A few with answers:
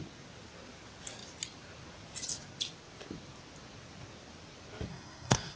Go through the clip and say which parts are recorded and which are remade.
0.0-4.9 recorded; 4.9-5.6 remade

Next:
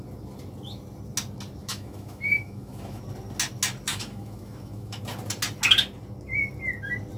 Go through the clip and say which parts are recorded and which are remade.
0.0-1.6 recorded; 1.6-3.0 remade; 3.0-3.9 recorded; 3.9-5.0 remade; 5.0-7.2 recorded

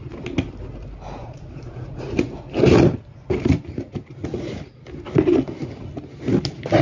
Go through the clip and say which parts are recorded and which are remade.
0.0-1.2 recorded; 1.2-2.3 remade; 2.3-4.2 recorded; 4.2-4.8 remade; 4.8-6.8 recorded

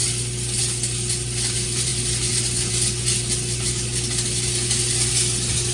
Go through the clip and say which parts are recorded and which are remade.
0.0-5.7 recorded

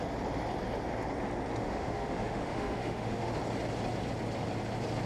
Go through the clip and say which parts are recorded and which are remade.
0.0-1.6 recorded; 1.6-3.3 remade; 3.3-5.1 recorded

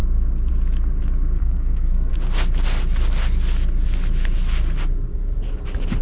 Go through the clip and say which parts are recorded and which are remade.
0.0-1.4 recorded; 1.4-2.1 remade; 2.1-6.0 recorded